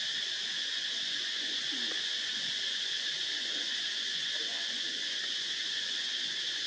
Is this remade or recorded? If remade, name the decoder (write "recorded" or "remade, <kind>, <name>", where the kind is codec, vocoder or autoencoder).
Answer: remade, vocoder, Vocos